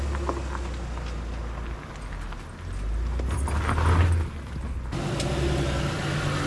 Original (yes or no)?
yes